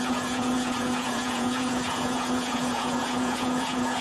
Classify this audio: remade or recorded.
remade